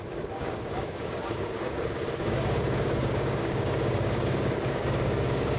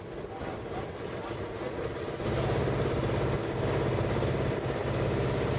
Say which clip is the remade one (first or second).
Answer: first